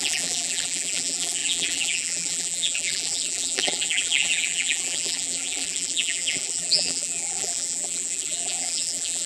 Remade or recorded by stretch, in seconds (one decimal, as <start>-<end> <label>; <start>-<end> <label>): 0.0-9.3 remade